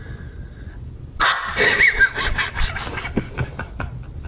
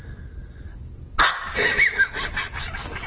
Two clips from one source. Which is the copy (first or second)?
first